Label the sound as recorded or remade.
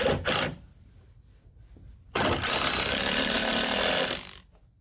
recorded